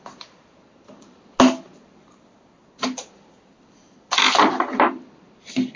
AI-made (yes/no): no